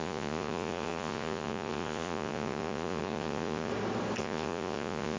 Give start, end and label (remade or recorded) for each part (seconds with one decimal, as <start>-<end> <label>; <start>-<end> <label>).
0.0-3.7 remade; 3.7-4.2 recorded; 4.2-5.2 remade